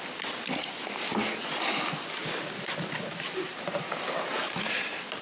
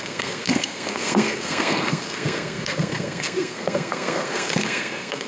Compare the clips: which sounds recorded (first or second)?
first